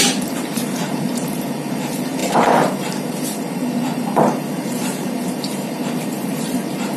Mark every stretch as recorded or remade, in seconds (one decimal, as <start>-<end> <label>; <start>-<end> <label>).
0.0-7.0 remade

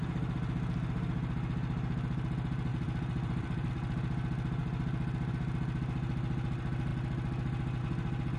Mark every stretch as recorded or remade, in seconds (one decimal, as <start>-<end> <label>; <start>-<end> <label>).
0.0-2.7 recorded; 2.7-3.7 remade; 3.7-8.4 recorded

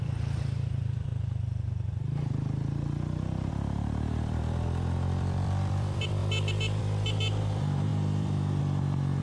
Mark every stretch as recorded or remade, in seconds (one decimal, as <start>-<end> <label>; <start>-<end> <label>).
0.0-1.1 remade; 1.1-3.5 recorded; 3.5-6.2 remade; 6.2-6.8 recorded; 6.8-9.2 remade

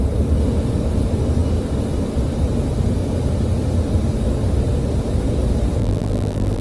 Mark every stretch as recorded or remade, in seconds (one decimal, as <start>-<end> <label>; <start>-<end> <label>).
0.0-5.8 recorded; 5.8-6.6 remade

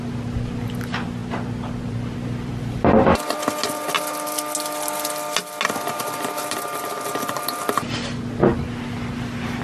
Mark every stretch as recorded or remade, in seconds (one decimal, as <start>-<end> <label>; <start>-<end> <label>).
0.0-9.6 recorded

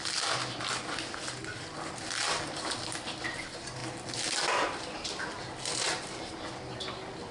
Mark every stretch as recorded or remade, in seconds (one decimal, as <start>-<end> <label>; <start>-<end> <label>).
0.0-7.3 recorded

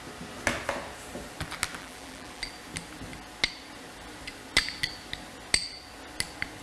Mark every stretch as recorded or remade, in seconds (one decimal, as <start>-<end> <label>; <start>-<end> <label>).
0.0-1.8 recorded; 1.8-2.5 remade; 2.5-6.6 recorded

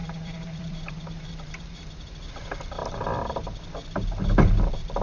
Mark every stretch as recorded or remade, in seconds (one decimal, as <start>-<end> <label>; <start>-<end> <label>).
0.0-2.1 remade; 2.1-5.0 recorded